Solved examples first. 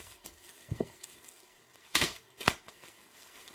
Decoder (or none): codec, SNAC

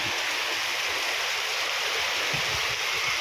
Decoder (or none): none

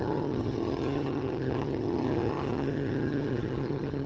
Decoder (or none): vocoder, HiFi-GAN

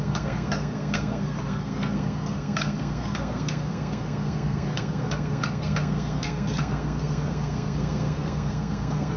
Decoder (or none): codec, SNAC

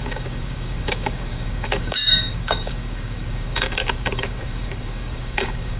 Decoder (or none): codec, DAC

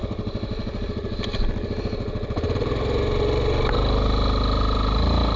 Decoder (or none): none